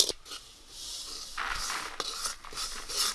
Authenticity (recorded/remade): recorded